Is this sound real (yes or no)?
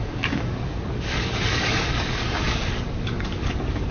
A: no